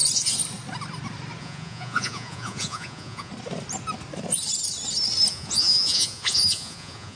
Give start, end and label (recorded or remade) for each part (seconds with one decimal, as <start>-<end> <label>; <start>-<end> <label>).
0.0-1.4 recorded; 1.4-3.3 remade; 3.3-5.3 recorded; 5.3-7.2 remade